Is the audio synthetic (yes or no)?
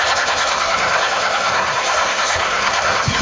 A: yes